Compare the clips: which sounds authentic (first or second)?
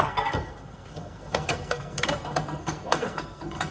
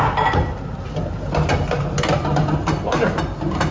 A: second